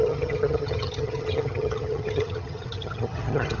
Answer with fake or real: fake